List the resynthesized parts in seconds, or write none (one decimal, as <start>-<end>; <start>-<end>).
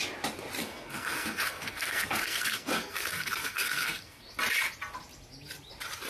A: 0.6-4.3